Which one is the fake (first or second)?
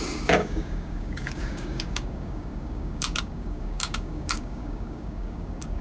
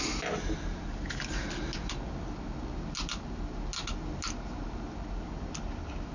first